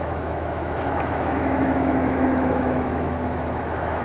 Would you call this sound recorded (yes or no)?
no